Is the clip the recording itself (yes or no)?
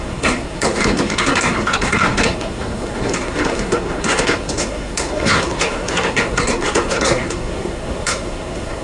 no